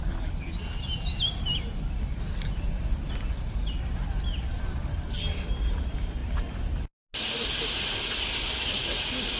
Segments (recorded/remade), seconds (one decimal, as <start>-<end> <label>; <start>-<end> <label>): 0.0-9.4 recorded